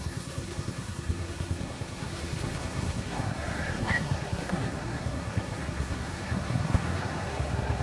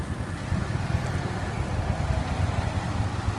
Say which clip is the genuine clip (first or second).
second